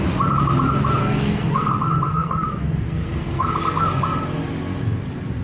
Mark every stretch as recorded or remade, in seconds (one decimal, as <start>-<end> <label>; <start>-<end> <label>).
0.0-1.0 recorded; 1.0-1.7 remade; 1.7-2.1 recorded; 2.1-3.5 remade; 3.5-5.4 recorded